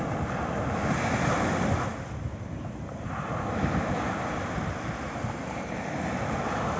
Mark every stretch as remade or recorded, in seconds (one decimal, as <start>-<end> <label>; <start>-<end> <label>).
0.0-6.8 recorded